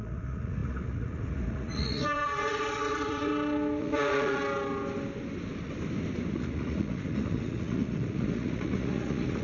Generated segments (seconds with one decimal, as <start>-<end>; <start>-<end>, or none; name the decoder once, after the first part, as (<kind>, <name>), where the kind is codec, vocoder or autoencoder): 0.0-3.3 (vocoder, Vocos); 3.8-4.4; 6.3-9.4